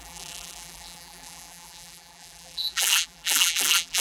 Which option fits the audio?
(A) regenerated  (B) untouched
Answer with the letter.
A